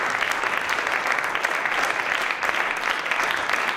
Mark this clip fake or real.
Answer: real